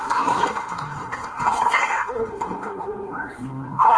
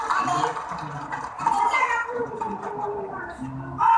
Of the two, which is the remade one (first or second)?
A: first